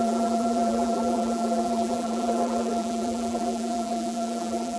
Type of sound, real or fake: fake